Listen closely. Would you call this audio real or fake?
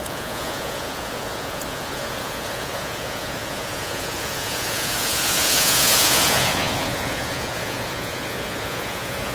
fake